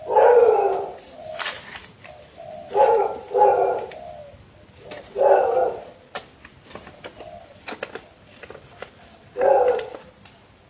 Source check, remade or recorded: recorded